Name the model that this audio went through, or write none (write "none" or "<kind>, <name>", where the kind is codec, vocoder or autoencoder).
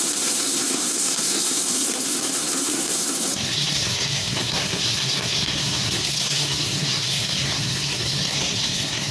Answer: codec, SNAC